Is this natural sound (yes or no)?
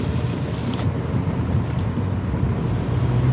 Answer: yes